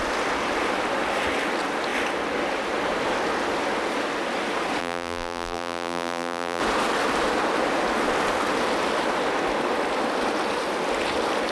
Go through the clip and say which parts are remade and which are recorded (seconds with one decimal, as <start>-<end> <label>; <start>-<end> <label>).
0.0-4.8 recorded; 4.8-6.6 remade; 6.6-11.5 recorded